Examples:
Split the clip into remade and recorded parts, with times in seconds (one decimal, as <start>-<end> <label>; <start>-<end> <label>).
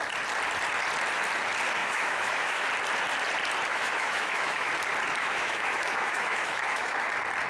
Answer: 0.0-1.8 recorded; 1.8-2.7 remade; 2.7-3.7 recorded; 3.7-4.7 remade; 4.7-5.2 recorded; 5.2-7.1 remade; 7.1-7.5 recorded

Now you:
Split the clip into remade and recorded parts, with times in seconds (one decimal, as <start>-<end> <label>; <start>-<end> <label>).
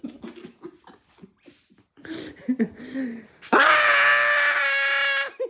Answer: 0.0-5.5 recorded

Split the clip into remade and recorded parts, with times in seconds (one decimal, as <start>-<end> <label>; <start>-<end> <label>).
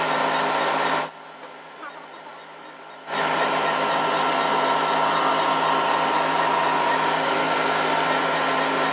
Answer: 0.0-8.9 recorded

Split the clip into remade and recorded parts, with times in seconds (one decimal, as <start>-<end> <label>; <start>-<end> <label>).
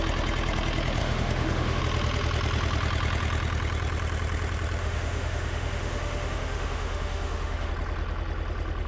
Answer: 0.0-1.0 recorded; 1.0-1.8 remade; 1.8-4.8 recorded; 4.8-7.7 remade; 7.7-8.9 recorded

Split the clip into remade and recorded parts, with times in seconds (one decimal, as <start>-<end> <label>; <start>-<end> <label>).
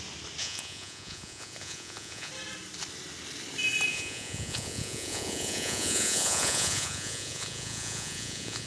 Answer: 0.0-0.4 recorded; 0.4-2.3 remade; 2.3-3.9 recorded; 3.9-8.7 remade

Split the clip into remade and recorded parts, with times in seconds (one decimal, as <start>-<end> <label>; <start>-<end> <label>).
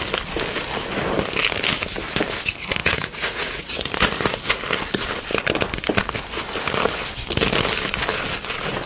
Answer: 0.0-2.8 recorded; 2.8-4.6 remade; 4.6-8.9 recorded